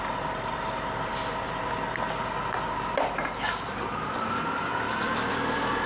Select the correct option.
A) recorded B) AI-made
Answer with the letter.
A